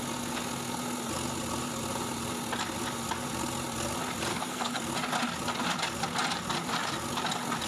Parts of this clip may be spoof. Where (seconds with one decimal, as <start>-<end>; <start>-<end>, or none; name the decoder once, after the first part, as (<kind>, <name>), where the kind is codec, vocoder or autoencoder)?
4.3-4.9 (codec, SNAC)